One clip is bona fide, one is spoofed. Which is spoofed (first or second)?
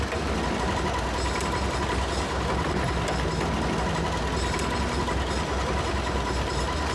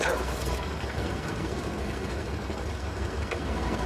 second